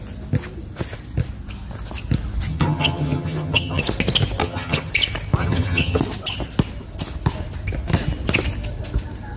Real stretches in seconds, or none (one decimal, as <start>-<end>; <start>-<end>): 0.0-2.5; 3.8-4.4; 4.9-5.4; 6.0-9.4

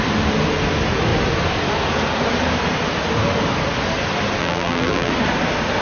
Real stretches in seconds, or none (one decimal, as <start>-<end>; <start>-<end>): 0.0-4.4; 5.1-5.8

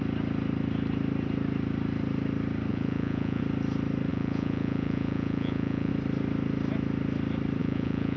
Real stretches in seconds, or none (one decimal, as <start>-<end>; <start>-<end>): 0.0-2.7; 3.4-4.1; 5.9-7.6